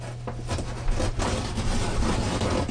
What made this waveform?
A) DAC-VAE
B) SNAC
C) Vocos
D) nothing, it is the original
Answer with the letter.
D